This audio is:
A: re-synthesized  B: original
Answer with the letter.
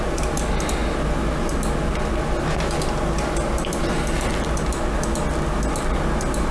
B